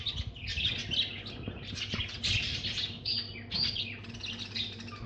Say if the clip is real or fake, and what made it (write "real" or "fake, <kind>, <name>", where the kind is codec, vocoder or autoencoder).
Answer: real